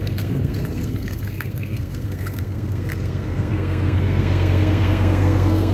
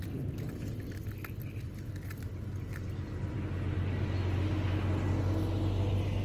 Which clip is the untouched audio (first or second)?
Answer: second